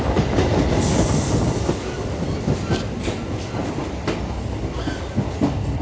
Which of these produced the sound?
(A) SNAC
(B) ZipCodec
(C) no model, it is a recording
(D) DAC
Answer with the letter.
C